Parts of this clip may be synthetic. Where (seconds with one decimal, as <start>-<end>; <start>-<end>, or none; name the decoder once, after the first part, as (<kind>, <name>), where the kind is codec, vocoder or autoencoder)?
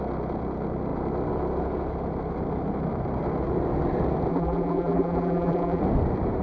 4.3-5.8 (vocoder, BigVGAN v2)